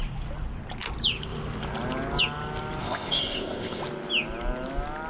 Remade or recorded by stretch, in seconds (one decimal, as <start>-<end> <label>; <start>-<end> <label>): 0.0-2.8 recorded; 2.8-3.8 remade; 3.8-5.1 recorded